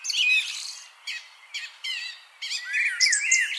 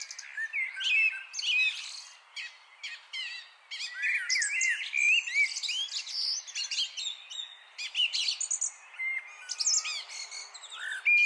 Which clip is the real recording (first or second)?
second